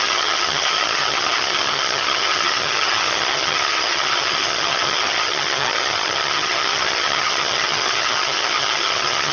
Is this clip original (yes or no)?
no